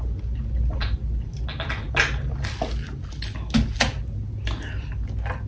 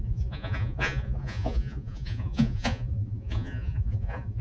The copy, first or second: second